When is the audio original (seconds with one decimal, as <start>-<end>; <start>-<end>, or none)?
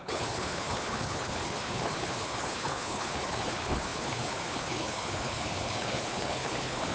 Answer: none